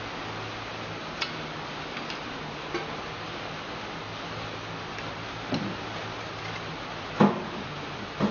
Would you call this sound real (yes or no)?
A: yes